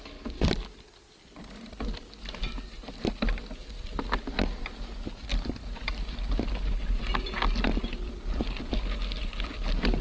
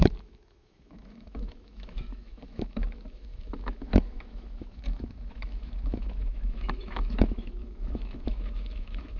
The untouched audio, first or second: first